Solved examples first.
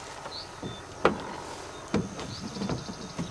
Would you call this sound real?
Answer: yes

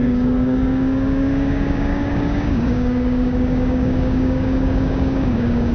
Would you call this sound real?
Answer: no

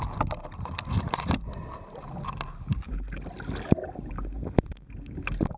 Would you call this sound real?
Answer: yes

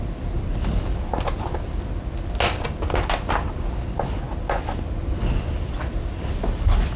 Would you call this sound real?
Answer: yes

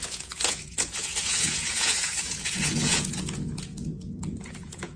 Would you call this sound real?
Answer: no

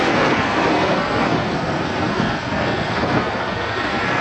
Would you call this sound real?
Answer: no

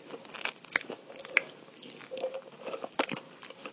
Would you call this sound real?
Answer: yes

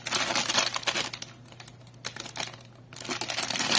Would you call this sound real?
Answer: yes